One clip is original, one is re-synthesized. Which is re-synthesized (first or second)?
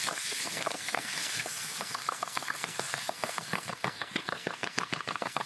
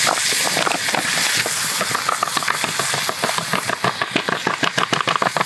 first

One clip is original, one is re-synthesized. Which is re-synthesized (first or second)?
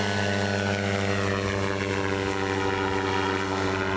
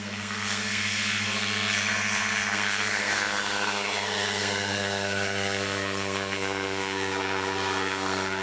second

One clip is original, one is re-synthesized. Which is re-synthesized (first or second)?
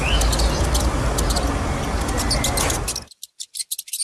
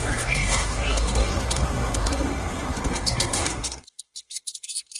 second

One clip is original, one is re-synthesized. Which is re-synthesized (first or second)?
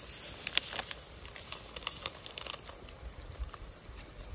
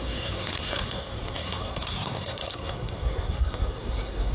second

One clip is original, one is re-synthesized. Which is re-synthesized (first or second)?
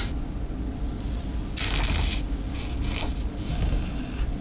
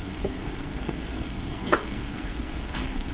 second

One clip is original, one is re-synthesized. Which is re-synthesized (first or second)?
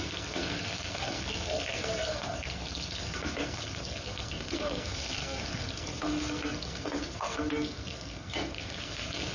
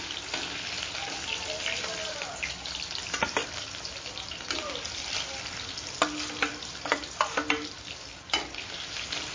first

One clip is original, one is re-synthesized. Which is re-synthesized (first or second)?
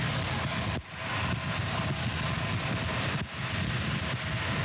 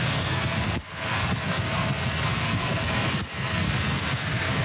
second